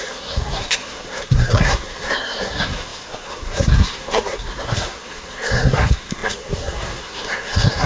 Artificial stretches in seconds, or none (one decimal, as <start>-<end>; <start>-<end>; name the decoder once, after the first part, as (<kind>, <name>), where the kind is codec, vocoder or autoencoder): 0.0-7.9 (codec, SNAC)